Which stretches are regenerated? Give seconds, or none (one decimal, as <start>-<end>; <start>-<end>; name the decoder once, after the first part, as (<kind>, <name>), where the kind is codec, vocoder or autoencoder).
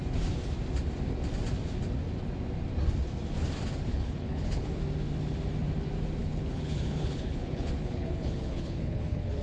3.9-4.8 (codec, HILCodec); 6.2-9.4